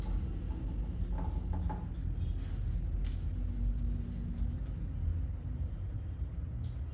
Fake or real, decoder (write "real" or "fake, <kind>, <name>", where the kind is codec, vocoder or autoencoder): real